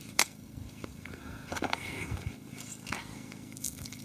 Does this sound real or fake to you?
fake